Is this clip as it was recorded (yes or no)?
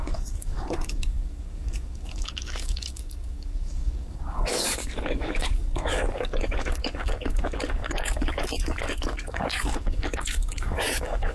no